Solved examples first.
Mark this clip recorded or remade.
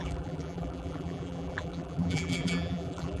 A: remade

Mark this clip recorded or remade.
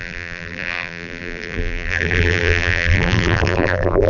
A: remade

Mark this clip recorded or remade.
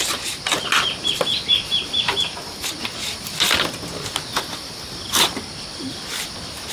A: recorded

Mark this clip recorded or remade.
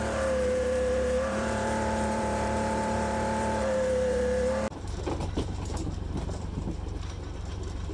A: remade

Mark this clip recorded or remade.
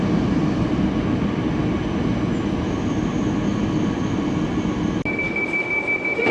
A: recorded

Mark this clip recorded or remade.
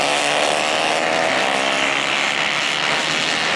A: recorded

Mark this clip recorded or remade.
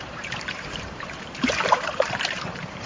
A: remade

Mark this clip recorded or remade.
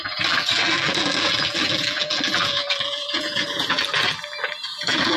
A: remade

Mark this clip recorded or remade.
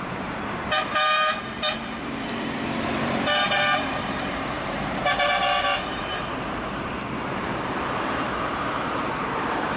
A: remade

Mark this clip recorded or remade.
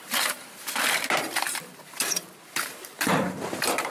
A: remade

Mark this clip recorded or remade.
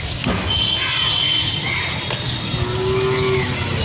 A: recorded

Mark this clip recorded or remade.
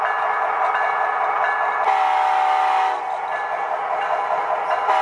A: recorded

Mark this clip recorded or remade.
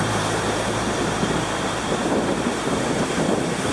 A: remade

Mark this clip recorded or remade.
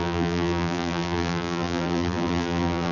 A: remade